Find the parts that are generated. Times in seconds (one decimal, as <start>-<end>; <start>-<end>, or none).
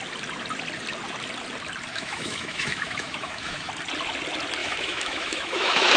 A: 1.9-3.7; 4.6-6.0